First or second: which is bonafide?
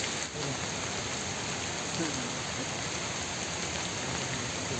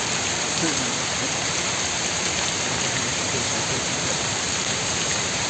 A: first